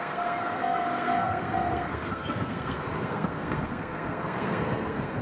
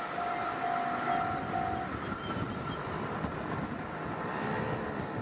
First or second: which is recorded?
second